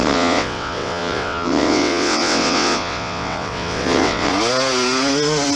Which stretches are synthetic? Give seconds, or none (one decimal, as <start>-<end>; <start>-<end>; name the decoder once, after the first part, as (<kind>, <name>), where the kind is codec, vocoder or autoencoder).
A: 0.0-4.3 (vocoder, WaveNeXt)